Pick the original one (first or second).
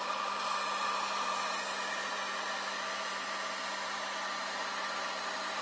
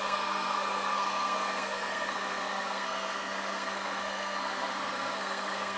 first